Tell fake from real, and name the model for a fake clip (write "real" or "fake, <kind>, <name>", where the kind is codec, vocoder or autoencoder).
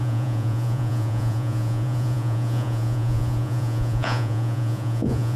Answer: fake, vocoder, Vocos